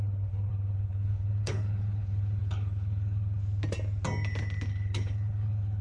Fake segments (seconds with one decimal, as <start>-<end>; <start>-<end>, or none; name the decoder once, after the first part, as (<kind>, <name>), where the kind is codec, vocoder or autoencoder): 0.0-3.4 (codec, HILCodec); 4.7-5.8